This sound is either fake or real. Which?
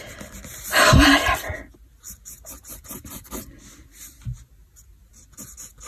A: real